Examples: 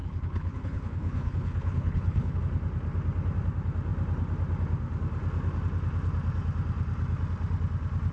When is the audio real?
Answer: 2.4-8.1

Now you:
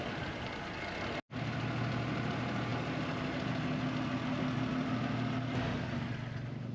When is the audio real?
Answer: 0.0-6.7

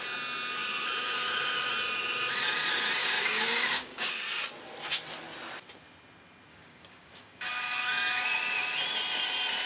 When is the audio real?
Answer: 0.0-3.0; 4.1-6.5; 7.5-9.7